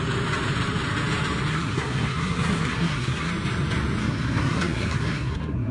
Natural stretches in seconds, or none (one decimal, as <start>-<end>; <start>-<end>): 0.0-1.5; 3.3-4.0